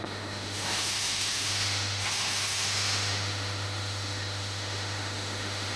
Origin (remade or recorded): remade